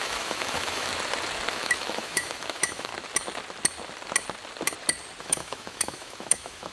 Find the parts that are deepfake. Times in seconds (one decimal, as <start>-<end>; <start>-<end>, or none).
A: 0.0-0.9; 1.5-2.9; 5.2-6.7